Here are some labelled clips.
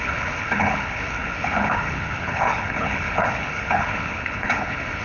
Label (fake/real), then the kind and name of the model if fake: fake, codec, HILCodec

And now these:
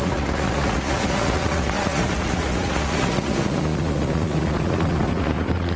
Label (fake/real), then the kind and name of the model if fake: fake, vocoder, Vocos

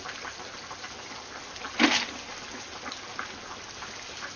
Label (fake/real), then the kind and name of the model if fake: real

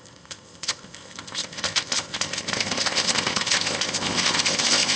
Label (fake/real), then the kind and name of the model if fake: fake, codec, ZipCodec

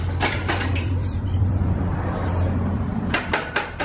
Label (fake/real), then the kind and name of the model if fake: fake, vocoder, BigVGAN v2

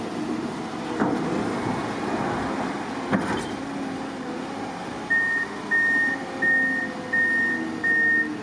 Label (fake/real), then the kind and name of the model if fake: real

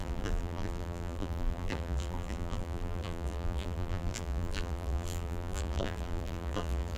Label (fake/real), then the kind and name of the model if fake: fake, vocoder, BigVGAN v2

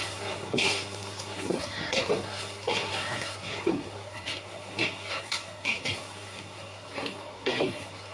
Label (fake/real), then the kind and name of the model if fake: fake, codec, SNAC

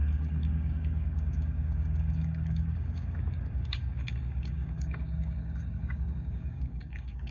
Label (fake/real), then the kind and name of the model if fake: fake, codec, DAC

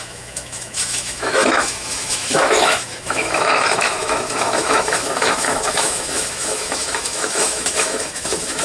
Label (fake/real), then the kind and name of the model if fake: fake, autoencoder, DAC-VAE